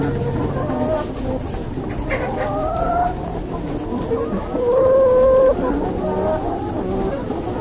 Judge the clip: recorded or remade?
recorded